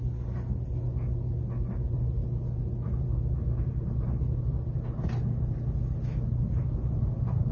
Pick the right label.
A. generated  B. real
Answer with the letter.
B